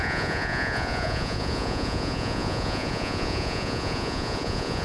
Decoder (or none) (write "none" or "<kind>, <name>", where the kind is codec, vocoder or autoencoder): vocoder, Vocos